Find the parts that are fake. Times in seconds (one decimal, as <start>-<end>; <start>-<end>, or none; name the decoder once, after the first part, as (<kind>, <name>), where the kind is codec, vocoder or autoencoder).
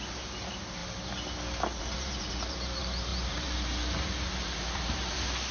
0.0-0.8 (vocoder, BigVGAN v2); 1.8-5.5